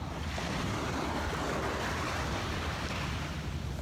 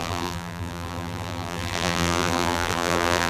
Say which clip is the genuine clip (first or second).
first